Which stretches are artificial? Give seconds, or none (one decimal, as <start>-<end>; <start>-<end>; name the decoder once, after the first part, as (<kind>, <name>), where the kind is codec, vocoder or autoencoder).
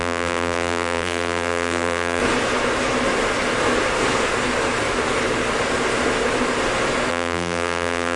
0.0-2.2 (vocoder, BigVGAN v2); 7.1-8.2